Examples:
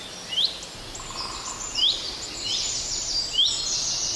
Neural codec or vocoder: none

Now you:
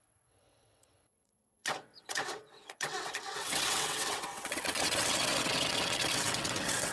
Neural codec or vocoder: vocoder, WaveNeXt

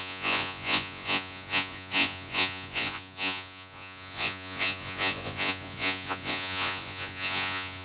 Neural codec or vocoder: vocoder, Vocos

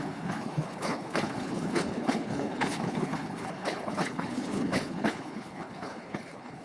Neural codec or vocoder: codec, HILCodec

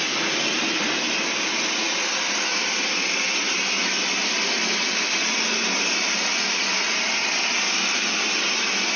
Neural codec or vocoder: none